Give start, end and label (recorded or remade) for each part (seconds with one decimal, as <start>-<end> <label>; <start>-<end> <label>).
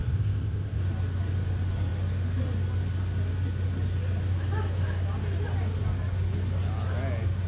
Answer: 0.0-0.8 remade; 0.8-7.5 recorded